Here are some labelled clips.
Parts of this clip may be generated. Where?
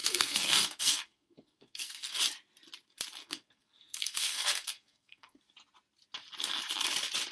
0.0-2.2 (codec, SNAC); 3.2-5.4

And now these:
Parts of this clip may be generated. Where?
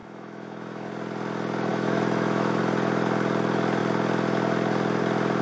0.0-0.9 (autoencoder, DAC-VAE); 1.7-2.6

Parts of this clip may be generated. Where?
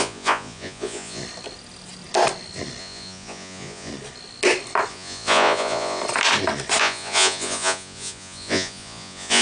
0.0-1.2 (vocoder, Vocos); 2.8-3.9; 4.9-6.0; 6.8-9.4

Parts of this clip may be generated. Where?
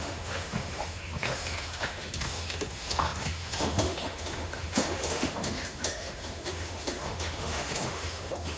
0.0-8.6 (autoencoder, DAC-VAE)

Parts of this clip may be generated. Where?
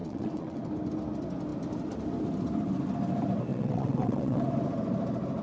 0.0-0.6 (vocoder, WaveNeXt); 3.5-4.4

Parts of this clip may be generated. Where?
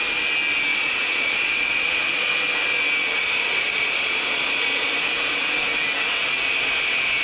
0.7-2.3 (vocoder, Vocos); 3.0-4.9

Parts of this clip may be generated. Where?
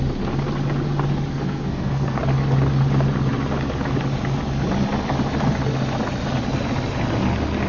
1.3-2.2 (codec, SNAC)